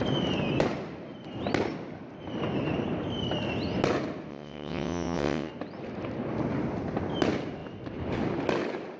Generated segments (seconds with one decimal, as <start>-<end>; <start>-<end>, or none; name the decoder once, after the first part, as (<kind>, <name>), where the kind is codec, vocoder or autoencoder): 4.3-5.5 (vocoder, WaveNeXt)